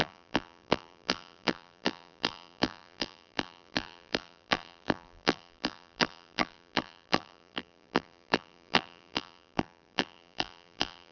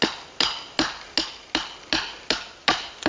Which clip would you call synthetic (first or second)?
first